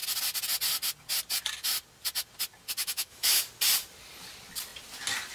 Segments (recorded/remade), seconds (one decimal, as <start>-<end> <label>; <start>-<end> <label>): 0.0-2.8 recorded; 2.8-3.4 remade; 3.4-5.3 recorded